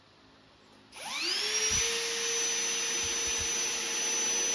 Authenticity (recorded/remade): recorded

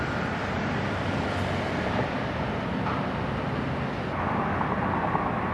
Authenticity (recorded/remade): recorded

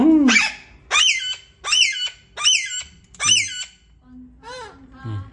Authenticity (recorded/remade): recorded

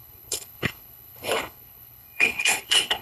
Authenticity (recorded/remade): remade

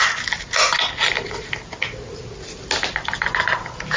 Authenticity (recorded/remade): recorded